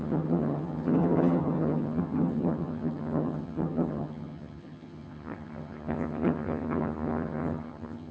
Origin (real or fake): fake